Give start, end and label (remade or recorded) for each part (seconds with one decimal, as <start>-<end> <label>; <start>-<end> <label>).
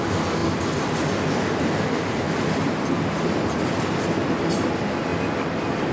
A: 0.0-5.9 recorded